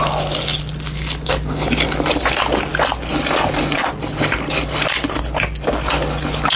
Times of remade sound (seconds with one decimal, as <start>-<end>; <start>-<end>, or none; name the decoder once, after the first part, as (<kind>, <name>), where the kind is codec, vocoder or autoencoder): none